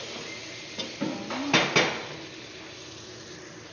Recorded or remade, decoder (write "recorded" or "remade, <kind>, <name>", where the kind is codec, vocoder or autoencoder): recorded